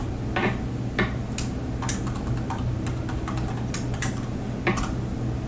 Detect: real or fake real